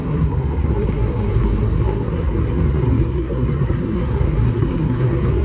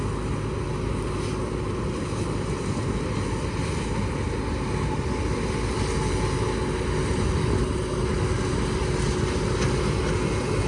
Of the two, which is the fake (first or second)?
first